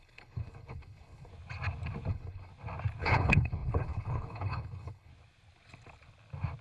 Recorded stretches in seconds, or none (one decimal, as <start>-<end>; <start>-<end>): 1.3-2.1; 2.5-3.0; 5.1-6.6

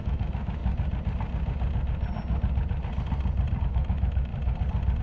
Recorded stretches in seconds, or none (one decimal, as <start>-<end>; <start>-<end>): 0.6-3.6; 4.3-5.0